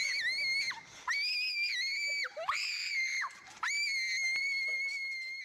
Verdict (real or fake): real